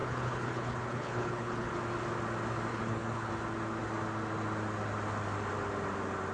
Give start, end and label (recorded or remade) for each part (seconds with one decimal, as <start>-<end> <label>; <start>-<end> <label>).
0.0-1.7 remade; 1.7-2.7 recorded; 2.7-3.3 remade; 3.3-6.3 recorded